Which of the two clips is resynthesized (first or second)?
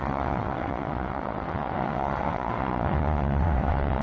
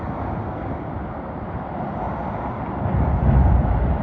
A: first